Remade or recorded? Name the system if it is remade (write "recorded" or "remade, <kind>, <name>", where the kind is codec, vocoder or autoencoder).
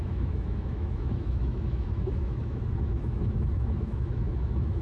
remade, autoencoder, DAC-VAE